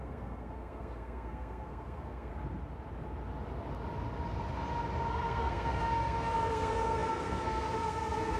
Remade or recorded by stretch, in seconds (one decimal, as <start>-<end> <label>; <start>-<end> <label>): 0.0-2.3 remade; 2.3-5.1 recorded; 5.1-8.4 remade